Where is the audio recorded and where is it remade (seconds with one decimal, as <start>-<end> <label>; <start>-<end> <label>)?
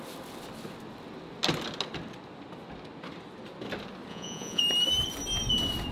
0.0-4.1 recorded; 4.1-4.6 remade; 4.6-5.9 recorded